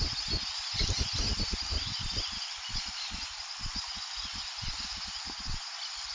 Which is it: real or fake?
real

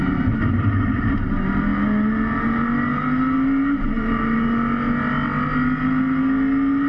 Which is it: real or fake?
real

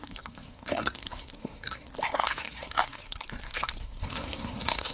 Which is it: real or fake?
fake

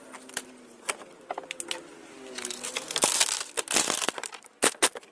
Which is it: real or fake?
real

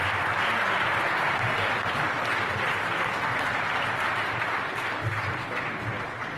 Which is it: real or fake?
real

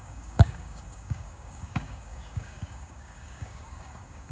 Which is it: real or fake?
fake